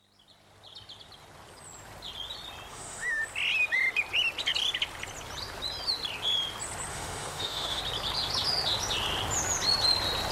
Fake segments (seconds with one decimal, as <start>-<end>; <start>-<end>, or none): 2.7-3.2; 6.9-7.8